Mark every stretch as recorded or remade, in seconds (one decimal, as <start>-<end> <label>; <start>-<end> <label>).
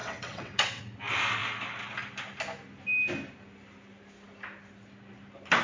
0.0-0.8 remade; 0.8-5.6 recorded